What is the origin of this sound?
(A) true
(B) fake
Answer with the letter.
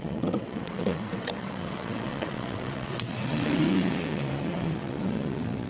B